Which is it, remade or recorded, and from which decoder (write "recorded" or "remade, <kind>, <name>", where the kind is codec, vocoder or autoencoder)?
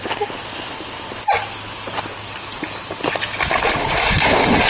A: recorded